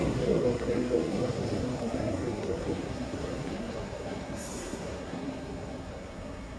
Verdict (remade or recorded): remade